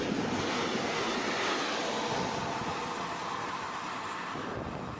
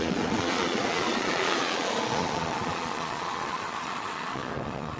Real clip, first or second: first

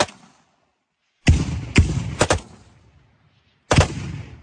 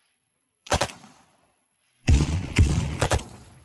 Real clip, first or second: first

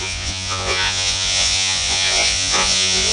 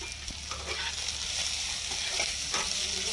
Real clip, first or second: second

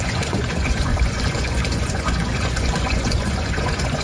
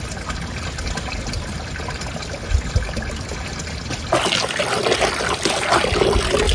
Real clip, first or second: second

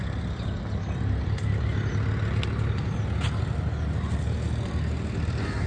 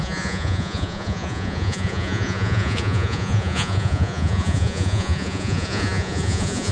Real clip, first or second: first